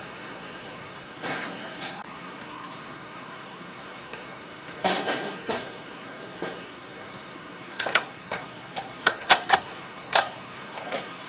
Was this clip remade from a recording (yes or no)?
yes